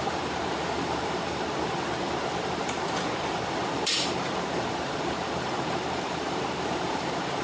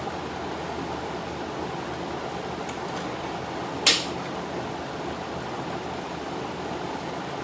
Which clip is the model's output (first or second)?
first